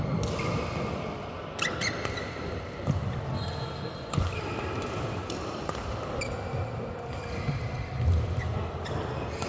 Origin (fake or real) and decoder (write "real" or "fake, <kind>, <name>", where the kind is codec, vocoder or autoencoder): real